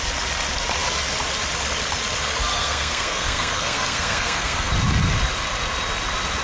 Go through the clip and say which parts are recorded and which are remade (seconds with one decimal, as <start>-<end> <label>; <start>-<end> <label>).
0.0-2.5 recorded; 2.5-4.7 remade; 4.7-6.4 recorded